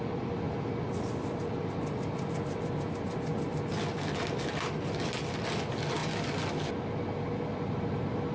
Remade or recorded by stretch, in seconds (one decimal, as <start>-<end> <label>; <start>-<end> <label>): 0.0-8.3 recorded